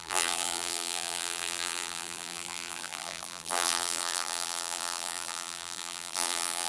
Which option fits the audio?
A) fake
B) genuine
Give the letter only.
A